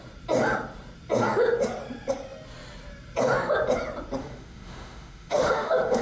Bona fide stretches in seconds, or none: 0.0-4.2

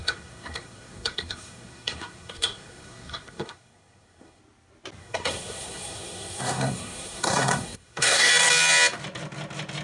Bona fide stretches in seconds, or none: 4.4-5.0; 8.3-9.8